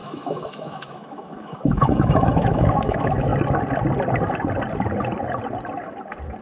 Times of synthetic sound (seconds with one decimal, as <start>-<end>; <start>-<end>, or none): 0.0-3.3

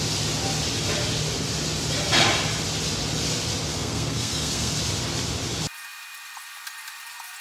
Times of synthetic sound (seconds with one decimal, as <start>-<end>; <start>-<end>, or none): 3.7-4.8

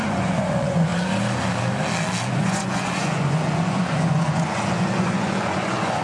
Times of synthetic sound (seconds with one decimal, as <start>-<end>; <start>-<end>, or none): 0.0-0.9; 2.3-6.0

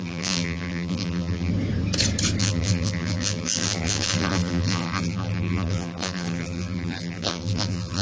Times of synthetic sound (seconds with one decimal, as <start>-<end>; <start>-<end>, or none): 0.0-1.5; 2.4-8.0

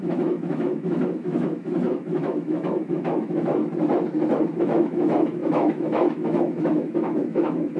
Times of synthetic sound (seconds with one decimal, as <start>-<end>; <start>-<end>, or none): 0.0-3.6; 4.6-7.8

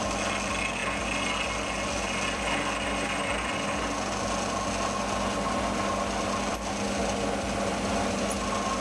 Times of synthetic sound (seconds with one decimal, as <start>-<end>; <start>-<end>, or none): none